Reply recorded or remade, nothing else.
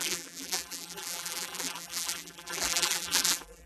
remade